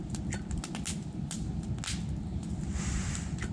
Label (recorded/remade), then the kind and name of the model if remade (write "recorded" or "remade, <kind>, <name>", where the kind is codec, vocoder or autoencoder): recorded